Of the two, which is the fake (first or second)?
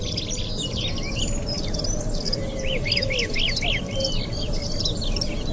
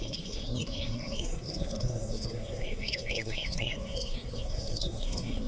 second